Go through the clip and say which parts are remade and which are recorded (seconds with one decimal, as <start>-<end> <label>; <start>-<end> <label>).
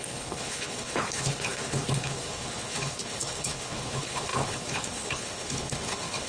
0.0-6.3 remade